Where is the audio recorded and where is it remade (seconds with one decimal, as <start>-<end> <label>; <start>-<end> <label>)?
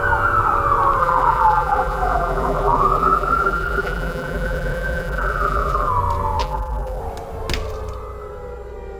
0.0-1.0 recorded; 1.0-5.9 remade; 5.9-6.4 recorded; 6.4-7.0 remade; 7.0-9.0 recorded